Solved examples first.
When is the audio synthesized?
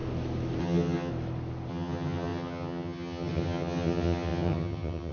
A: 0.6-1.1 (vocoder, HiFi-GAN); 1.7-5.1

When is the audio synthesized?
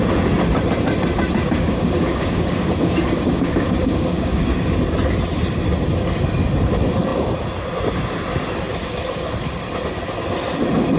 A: 1.4-4.8 (codec, DAC)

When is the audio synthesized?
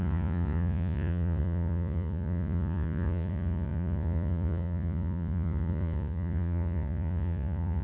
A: 0.0-7.8 (vocoder, Vocos)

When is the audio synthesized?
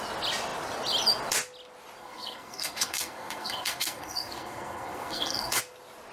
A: 2.0-5.6 (codec, SNAC)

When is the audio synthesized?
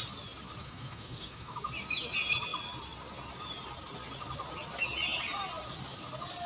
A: 0.6-1.7 (autoencoder, DAC-VAE)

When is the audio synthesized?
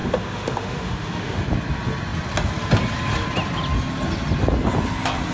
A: 0.0-1.4 (autoencoder, DAC-VAE)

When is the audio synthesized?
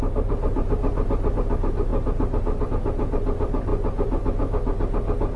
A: 0.0-0.8 (vocoder, BigVGAN v2); 1.4-3.7